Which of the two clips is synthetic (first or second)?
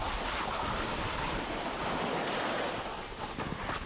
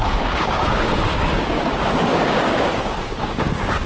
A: second